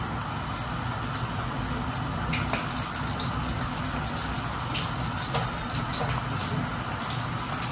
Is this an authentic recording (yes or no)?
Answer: yes